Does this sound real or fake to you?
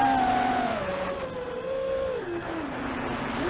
real